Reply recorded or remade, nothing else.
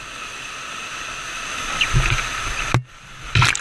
recorded